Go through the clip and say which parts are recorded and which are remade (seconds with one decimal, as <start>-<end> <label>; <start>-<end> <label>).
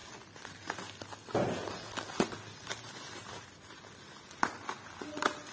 0.0-5.5 recorded